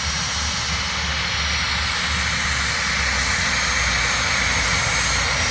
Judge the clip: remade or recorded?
recorded